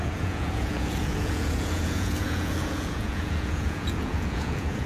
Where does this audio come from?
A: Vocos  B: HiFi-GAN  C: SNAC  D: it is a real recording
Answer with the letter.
A